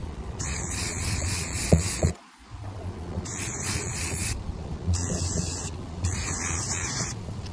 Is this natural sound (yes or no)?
no